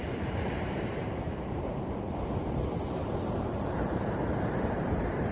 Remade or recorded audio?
remade